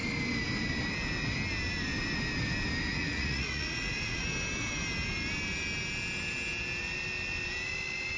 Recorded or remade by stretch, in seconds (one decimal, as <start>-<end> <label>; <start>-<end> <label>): 0.0-2.9 recorded; 2.9-4.2 remade; 4.2-8.2 recorded